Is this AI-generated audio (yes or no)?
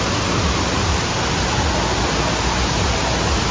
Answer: no